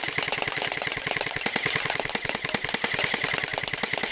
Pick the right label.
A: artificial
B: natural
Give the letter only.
B